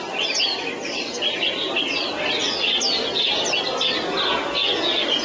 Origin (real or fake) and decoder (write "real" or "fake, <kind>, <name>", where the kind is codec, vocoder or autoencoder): real